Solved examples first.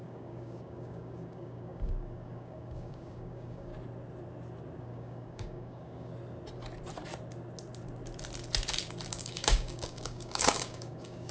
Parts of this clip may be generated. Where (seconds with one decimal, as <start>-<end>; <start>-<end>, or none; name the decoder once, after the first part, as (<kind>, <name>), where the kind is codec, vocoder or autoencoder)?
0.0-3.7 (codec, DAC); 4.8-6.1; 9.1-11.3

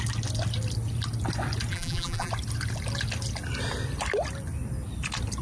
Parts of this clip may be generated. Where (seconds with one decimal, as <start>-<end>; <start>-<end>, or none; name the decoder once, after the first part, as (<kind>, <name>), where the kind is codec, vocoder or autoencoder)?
1.7-2.3 (vocoder, BigVGAN v2)

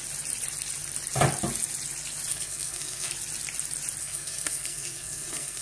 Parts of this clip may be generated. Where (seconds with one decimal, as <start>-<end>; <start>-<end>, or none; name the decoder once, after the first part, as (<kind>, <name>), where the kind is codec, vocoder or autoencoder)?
2.3-3.1 (codec, SNAC); 4.0-5.6

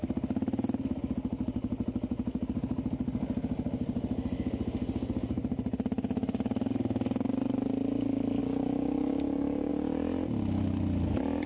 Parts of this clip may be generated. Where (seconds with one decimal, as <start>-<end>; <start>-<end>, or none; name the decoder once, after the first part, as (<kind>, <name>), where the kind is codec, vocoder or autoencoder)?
8.4-9.7 (codec, DAC)

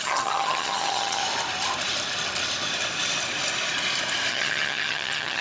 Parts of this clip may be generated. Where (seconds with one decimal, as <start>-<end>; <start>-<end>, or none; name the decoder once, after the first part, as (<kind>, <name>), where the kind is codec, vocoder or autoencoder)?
0.0-1.2 (vocoder, HiFi-GAN); 4.3-5.4

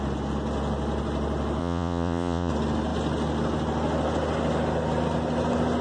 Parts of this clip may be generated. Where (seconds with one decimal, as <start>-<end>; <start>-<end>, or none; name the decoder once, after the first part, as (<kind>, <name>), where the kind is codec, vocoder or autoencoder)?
1.6-2.5 (vocoder, Vocos)